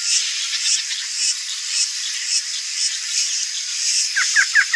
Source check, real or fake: real